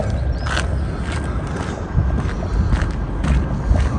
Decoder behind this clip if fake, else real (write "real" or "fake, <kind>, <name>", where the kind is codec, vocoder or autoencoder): real